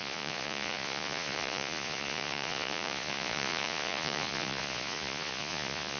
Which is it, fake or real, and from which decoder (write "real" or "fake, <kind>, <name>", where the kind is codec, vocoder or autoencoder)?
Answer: fake, vocoder, Vocos